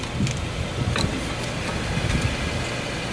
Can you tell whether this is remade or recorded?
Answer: recorded